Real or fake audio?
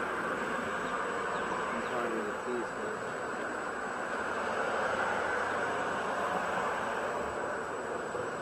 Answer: fake